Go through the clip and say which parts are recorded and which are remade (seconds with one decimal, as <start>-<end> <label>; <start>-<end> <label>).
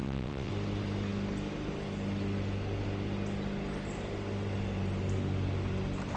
0.0-0.5 remade; 0.5-6.2 recorded